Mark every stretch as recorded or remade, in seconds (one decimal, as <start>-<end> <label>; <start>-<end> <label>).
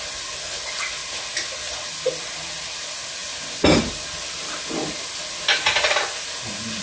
0.0-6.8 recorded